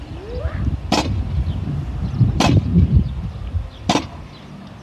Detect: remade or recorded recorded